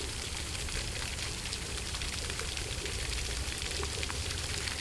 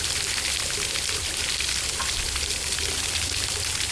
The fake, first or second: first